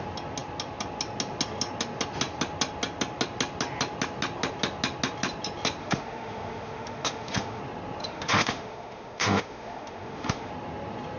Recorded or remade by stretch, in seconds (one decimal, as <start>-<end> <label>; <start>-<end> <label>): 0.0-5.8 recorded; 5.8-7.6 remade; 7.6-8.0 recorded; 8.0-10.5 remade; 10.5-11.2 recorded